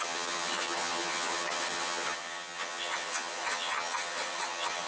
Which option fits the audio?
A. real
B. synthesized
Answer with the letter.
B